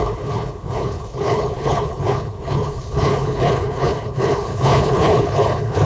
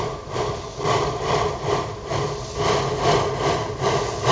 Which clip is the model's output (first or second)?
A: first